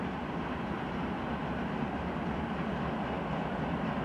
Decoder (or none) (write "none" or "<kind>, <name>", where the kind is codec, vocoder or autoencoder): none